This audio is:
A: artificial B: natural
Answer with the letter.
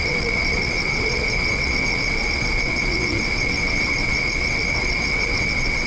A